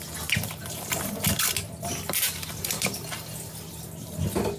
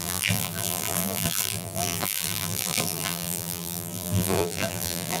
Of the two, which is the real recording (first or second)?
first